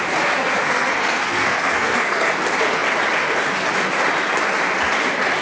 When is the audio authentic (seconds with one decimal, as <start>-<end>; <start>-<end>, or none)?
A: 0.0-0.4; 2.3-5.4

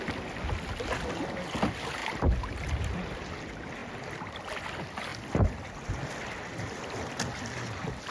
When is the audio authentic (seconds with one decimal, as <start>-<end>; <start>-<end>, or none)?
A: 0.0-8.1

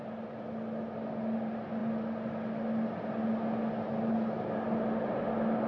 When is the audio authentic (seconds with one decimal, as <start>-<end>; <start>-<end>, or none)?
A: 0.0-5.7